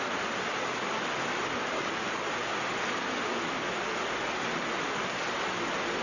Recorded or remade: recorded